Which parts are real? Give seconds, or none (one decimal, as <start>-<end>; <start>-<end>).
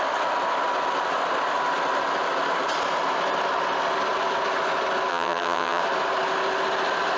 0.0-5.1; 5.8-7.2